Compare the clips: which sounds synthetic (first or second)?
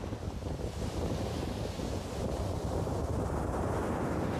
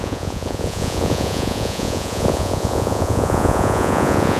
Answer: second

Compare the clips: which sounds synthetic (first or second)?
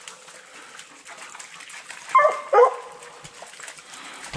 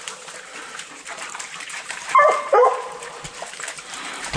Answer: second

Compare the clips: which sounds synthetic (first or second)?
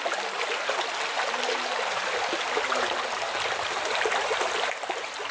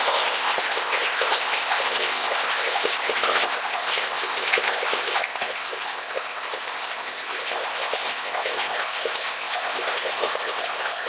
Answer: second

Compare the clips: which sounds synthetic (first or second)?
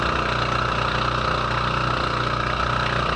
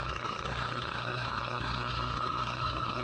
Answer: second